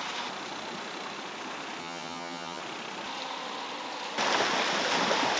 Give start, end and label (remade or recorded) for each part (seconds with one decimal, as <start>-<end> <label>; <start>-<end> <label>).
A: 0.0-1.8 recorded; 1.8-2.6 remade; 2.6-5.4 recorded